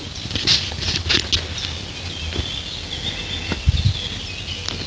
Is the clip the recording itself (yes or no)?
yes